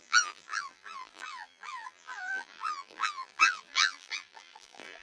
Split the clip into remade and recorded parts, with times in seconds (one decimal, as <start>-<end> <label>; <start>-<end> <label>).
0.0-5.0 remade

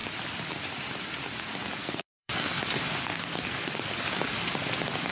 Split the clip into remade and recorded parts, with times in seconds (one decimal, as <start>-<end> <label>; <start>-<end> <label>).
0.0-1.8 recorded; 1.8-2.6 remade; 2.6-3.0 recorded; 3.0-3.8 remade; 3.8-5.1 recorded

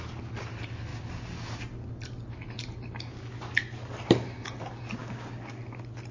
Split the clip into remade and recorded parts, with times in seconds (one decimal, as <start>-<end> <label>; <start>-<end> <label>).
0.0-5.0 recorded; 5.0-5.6 remade; 5.6-6.1 recorded

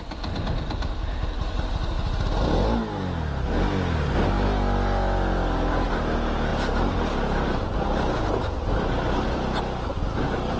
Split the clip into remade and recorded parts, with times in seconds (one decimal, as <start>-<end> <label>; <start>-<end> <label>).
0.0-10.6 recorded